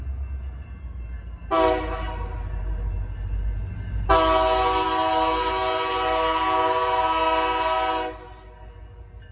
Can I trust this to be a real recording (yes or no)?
yes